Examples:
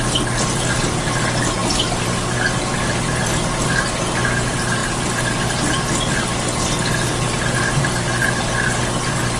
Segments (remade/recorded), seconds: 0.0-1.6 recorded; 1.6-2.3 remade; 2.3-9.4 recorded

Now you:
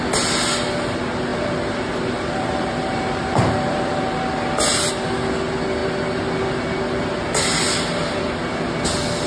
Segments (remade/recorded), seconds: 0.0-1.3 recorded; 1.3-4.0 remade; 4.0-9.3 recorded

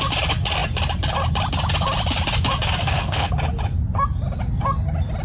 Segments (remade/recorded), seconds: 0.0-2.8 recorded; 2.8-3.3 remade; 3.3-5.2 recorded

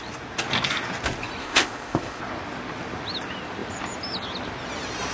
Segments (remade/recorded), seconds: 0.0-1.4 recorded; 1.4-2.2 remade; 2.2-5.1 recorded

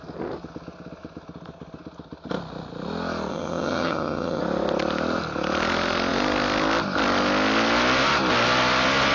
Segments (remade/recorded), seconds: 0.0-3.3 recorded; 3.3-4.4 remade; 4.4-9.1 recorded

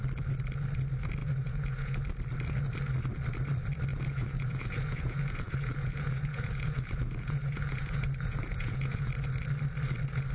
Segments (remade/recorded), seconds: 0.0-1.2 recorded; 1.2-2.0 remade; 2.0-3.9 recorded; 3.9-9.1 remade; 9.1-10.3 recorded